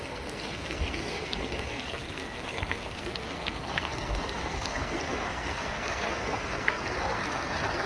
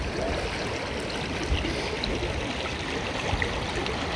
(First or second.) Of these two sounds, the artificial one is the first